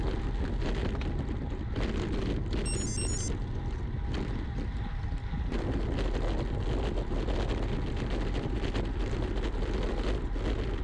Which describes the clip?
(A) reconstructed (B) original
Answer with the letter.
B